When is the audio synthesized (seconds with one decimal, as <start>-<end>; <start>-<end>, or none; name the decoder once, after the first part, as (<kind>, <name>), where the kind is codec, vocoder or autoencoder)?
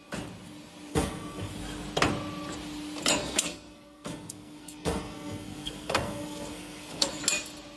0.9-1.5 (codec, SNAC); 3.2-7.2